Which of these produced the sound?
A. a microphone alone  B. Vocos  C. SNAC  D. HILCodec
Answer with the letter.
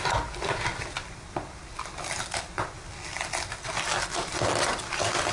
A